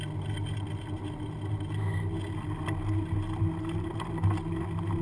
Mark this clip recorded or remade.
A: recorded